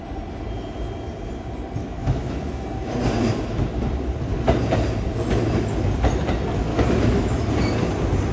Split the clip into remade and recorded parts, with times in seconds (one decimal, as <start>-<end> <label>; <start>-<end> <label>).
0.0-1.8 recorded; 1.8-2.3 remade; 2.3-6.7 recorded; 6.7-7.5 remade; 7.5-8.3 recorded